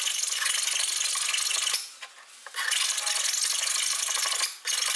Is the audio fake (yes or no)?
no